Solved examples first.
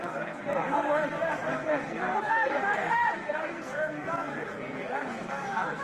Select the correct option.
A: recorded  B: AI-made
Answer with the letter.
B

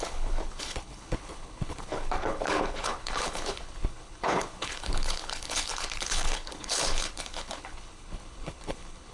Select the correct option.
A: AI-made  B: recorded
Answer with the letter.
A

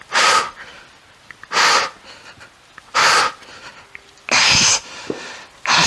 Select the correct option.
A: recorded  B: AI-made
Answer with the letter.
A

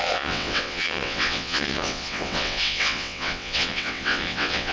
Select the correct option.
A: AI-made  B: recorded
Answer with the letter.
A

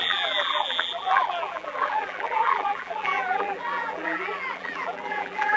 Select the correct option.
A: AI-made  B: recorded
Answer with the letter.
A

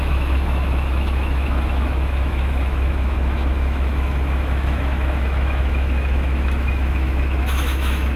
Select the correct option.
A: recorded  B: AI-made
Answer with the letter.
B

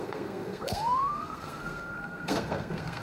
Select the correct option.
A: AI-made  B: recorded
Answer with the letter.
A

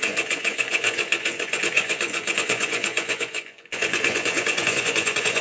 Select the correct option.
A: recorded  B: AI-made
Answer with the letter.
B